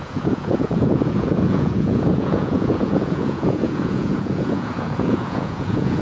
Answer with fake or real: fake